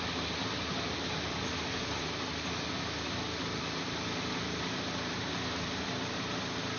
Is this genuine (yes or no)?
yes